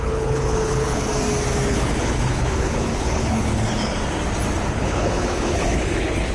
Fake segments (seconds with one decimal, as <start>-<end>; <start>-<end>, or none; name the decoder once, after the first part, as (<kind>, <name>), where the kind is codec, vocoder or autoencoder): 0.0-1.1 (codec, HILCodec); 1.7-3.9; 4.7-6.3